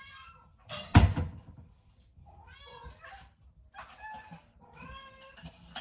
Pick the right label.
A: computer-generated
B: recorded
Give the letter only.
B